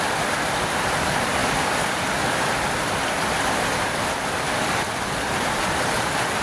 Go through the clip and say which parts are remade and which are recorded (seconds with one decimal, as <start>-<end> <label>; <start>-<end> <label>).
0.0-6.4 recorded